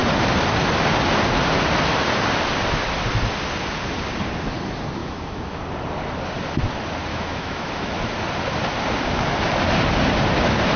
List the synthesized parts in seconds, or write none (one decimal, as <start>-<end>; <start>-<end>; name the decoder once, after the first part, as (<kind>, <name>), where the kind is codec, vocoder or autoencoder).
5.0-5.6 (autoencoder, DAC-VAE); 7.1-8.0